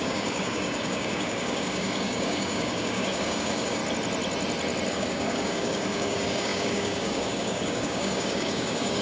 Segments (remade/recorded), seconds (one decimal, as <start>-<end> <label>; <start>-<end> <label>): 0.0-3.8 remade; 3.8-4.9 recorded; 4.9-9.0 remade